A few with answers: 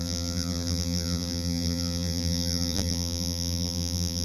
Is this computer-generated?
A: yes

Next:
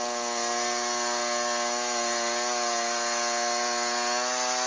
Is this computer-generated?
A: no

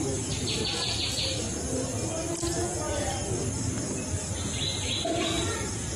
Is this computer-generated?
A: no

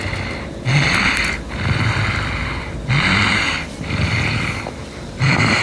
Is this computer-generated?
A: yes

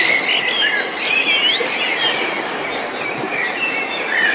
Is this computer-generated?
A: no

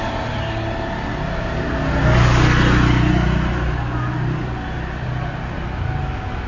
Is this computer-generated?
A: no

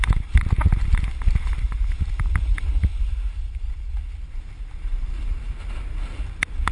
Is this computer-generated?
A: no